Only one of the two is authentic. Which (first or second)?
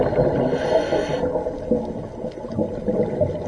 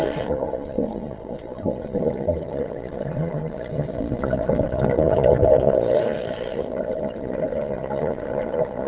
first